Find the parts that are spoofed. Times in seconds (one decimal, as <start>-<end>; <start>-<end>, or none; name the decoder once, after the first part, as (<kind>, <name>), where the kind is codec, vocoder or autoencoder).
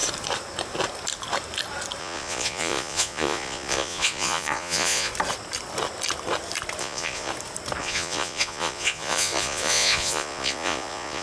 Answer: 2.0-5.1 (vocoder, Vocos); 6.8-7.3; 7.8-11.2